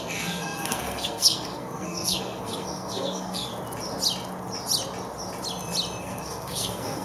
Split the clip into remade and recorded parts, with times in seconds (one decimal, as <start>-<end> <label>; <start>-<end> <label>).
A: 0.0-3.5 remade; 3.5-6.0 recorded; 6.0-7.0 remade